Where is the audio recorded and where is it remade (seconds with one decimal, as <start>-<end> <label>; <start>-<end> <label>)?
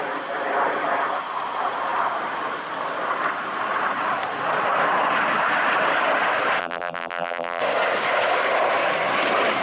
0.0-6.6 recorded; 6.6-7.6 remade; 7.6-9.6 recorded